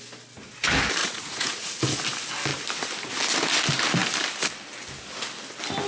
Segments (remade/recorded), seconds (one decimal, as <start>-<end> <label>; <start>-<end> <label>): 0.0-1.0 recorded; 1.0-1.8 remade; 1.8-5.9 recorded